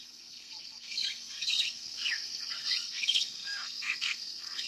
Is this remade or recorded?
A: remade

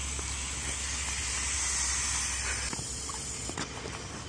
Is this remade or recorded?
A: recorded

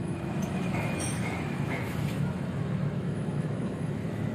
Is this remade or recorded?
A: remade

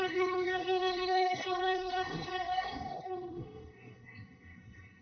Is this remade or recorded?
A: remade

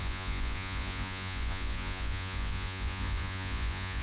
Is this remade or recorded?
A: remade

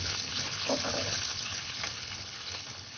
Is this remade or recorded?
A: remade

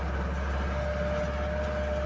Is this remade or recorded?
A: recorded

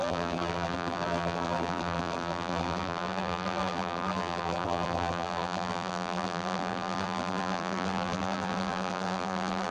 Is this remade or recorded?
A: remade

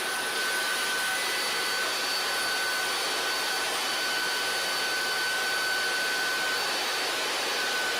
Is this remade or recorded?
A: recorded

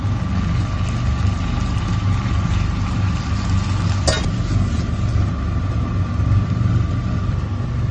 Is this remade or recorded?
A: recorded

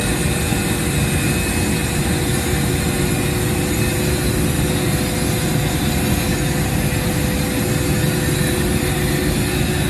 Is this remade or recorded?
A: recorded